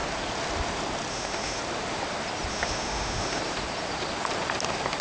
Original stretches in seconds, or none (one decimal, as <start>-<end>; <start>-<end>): 0.0-1.1; 1.6-2.5; 3.4-5.0